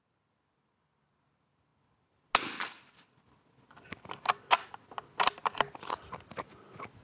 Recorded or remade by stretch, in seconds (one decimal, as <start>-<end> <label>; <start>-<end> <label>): 0.0-7.0 recorded